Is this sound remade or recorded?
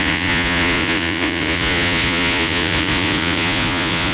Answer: remade